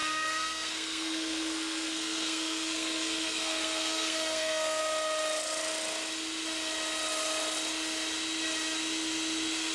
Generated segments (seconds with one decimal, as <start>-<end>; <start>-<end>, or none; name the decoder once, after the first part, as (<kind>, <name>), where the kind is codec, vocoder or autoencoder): 0.0-4.8 (codec, SNAC)